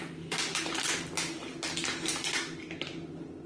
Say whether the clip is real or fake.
real